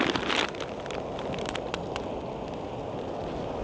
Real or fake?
real